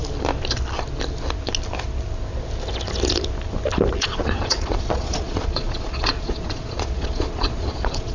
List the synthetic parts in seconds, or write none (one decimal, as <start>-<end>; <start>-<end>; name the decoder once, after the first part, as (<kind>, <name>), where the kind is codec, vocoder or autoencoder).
3.9-8.1 (vocoder, Vocos)